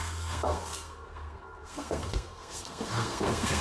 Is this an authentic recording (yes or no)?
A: no